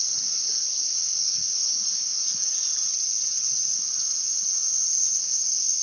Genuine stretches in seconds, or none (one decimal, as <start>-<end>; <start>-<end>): 0.0-0.9; 2.7-5.2